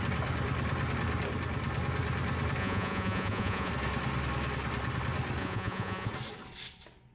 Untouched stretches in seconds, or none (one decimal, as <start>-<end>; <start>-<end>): 0.0-2.6; 3.7-5.4; 6.1-7.1